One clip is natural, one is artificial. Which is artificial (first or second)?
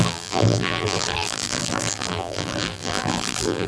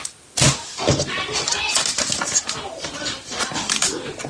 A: first